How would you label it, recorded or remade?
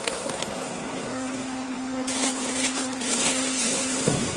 remade